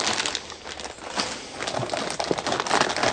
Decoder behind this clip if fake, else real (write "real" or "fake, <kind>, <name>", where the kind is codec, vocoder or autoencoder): real